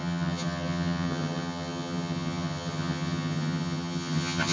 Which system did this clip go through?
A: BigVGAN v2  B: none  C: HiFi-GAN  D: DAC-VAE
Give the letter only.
C